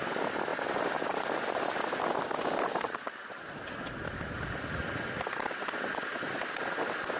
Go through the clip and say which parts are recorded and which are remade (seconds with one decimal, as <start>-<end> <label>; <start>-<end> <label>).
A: 0.0-7.2 recorded